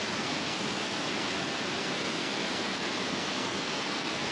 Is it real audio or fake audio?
fake